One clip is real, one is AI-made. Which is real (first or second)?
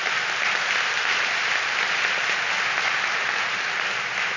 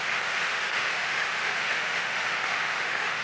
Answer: first